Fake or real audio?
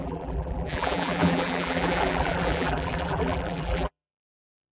fake